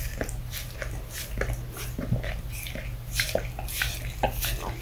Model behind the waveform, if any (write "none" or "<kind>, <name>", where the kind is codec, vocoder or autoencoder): none